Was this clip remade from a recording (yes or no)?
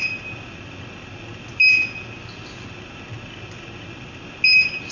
no